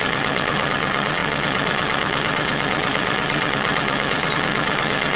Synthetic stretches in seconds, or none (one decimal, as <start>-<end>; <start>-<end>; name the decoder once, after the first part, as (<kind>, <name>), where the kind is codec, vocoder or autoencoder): 0.0-5.2 (vocoder, WaveNeXt)